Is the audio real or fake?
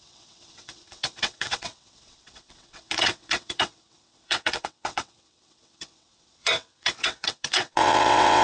fake